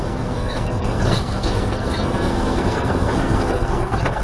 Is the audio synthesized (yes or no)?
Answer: yes